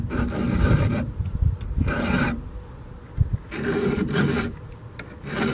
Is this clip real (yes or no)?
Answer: yes